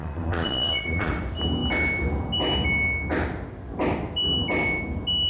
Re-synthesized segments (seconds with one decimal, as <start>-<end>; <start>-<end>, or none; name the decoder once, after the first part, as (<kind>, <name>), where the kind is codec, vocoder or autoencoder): 0.0-1.1 (vocoder, Vocos)